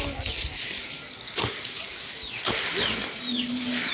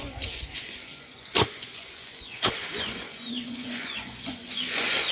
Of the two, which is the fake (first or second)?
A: second